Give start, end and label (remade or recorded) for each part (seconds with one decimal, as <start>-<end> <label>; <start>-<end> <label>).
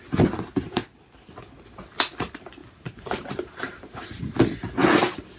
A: 0.0-2.6 recorded; 2.6-4.0 remade; 4.0-5.4 recorded